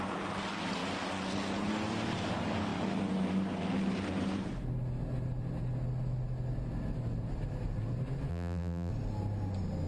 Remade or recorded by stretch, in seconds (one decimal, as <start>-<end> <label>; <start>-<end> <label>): 0.0-8.3 recorded; 8.3-8.9 remade; 8.9-9.9 recorded